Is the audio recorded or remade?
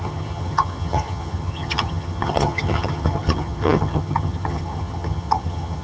remade